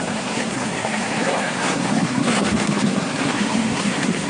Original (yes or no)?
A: no